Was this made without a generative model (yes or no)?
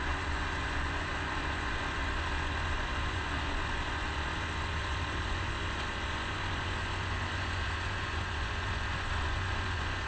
no